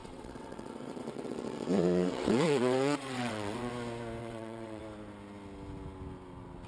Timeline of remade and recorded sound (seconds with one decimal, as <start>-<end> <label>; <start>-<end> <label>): 0.0-3.7 remade; 3.7-4.2 recorded; 4.2-4.8 remade; 4.8-6.7 recorded